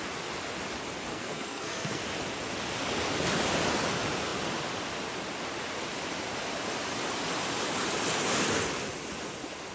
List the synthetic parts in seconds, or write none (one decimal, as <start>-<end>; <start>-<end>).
1.1-2.0